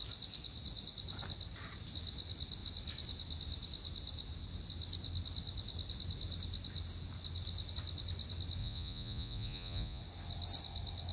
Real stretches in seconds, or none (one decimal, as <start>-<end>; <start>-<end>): 0.0-8.6; 10.0-11.1